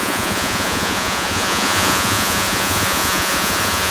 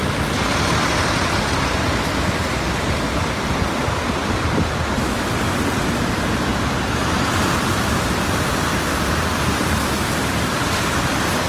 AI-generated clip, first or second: first